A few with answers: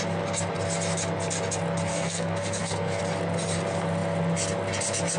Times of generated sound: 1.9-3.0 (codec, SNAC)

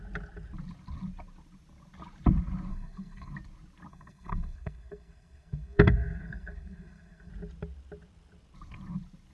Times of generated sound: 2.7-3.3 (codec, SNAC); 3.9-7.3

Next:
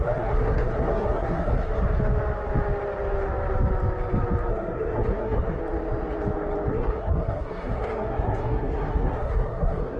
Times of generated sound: 0.0-1.7 (codec, SNAC); 4.5-5.6; 6.7-10.0

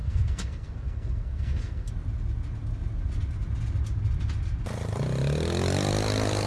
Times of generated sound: 0.0-1.9 (codec, SNAC)

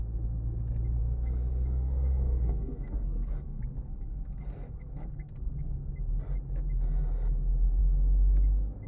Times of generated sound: 1.0-5.9 (codec, SNAC)